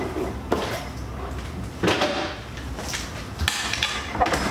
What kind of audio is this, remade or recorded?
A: recorded